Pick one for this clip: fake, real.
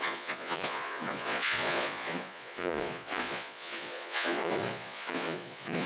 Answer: fake